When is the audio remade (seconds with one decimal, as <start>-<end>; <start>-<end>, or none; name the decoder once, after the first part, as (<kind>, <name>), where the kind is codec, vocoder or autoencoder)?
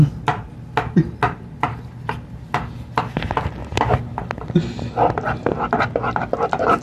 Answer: none